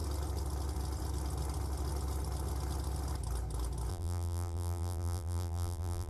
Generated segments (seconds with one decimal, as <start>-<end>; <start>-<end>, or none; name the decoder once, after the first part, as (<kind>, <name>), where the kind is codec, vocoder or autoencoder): 3.9-6.1 (vocoder, BigVGAN v2)